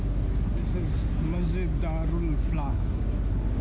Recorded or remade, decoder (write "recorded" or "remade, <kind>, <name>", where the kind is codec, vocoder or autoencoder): recorded